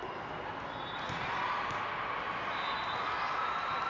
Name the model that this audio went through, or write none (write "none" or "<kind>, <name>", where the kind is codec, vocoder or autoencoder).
none